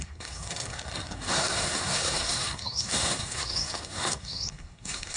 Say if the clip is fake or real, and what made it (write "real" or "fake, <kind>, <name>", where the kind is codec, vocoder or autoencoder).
fake, codec, SNAC